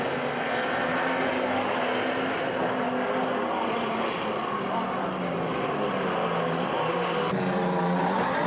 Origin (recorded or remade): recorded